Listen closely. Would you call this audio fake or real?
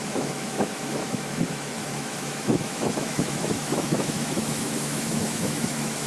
fake